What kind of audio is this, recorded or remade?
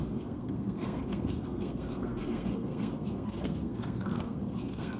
remade